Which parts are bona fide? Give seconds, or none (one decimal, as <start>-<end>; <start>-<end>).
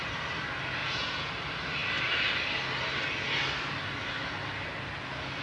0.0-0.8; 1.3-5.4